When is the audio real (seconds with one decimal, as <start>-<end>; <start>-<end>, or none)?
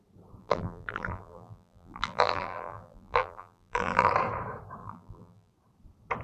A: 0.0-0.4; 4.1-4.8; 5.5-6.2